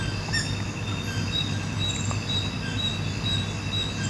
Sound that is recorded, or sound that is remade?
recorded